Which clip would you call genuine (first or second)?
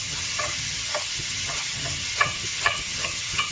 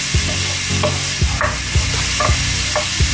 second